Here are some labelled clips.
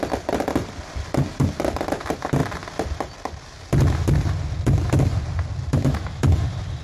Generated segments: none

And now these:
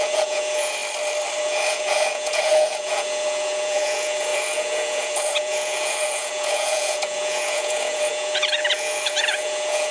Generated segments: 0.0-0.8 (vocoder, Vocos); 1.4-9.9